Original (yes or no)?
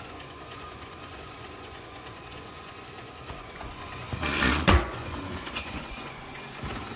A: no